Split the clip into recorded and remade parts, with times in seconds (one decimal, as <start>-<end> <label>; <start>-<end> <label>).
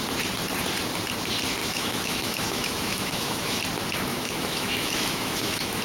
0.0-1.6 recorded; 1.6-3.6 remade; 3.6-4.1 recorded; 4.1-5.8 remade